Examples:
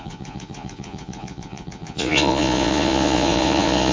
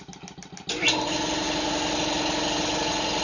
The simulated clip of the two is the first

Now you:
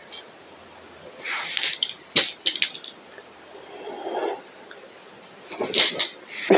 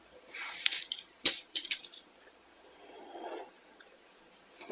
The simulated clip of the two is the second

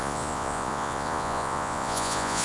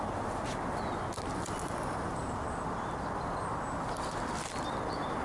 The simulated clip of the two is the first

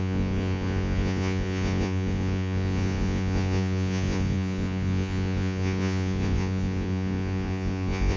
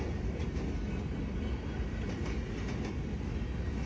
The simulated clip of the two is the first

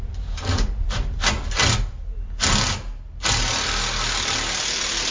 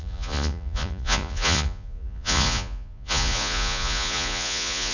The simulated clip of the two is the second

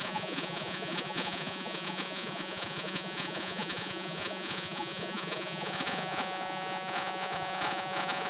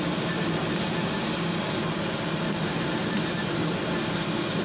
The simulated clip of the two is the first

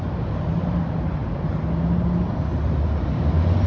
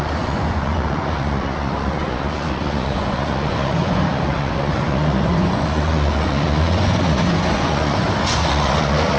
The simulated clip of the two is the second